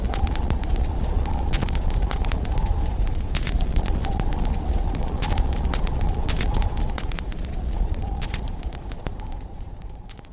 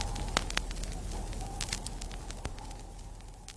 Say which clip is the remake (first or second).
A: first